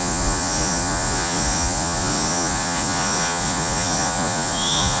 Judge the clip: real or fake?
fake